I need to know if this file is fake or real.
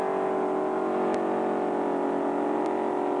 real